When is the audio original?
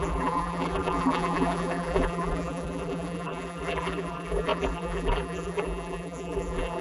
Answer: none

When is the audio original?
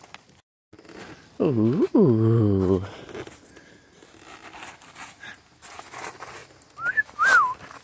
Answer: 0.0-7.8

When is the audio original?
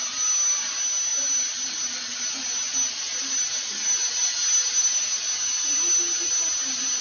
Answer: 0.0-7.0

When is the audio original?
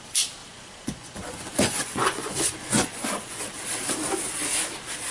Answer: 0.0-0.4; 3.4-5.1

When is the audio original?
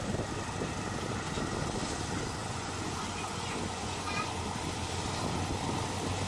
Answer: 0.0-2.4; 4.3-6.3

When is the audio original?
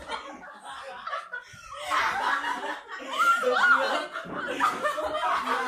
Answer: 0.0-5.7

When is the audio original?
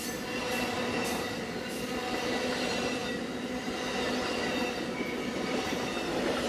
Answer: 0.0-6.5